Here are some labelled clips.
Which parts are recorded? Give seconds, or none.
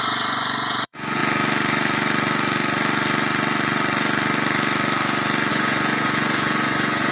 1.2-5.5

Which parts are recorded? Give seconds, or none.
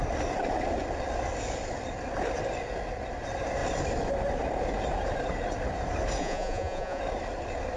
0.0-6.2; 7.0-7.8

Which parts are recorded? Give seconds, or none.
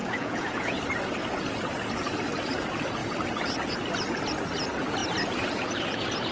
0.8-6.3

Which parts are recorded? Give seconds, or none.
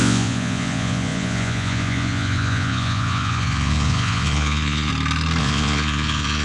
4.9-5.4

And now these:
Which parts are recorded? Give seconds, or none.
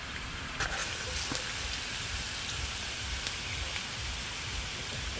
0.0-5.2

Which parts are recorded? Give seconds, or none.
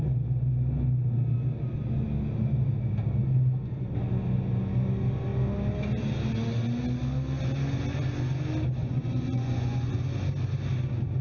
0.0-8.8; 10.0-11.2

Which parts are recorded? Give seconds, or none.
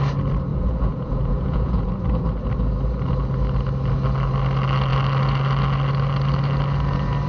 0.0-0.5; 1.9-7.3